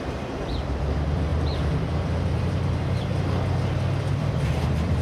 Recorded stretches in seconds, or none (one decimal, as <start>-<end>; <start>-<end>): 3.1-4.1